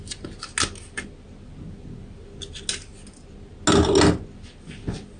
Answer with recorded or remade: recorded